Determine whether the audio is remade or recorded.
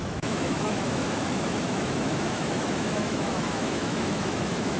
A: remade